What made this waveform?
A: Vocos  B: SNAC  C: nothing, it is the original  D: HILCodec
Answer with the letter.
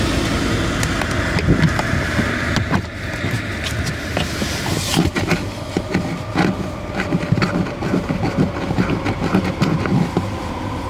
C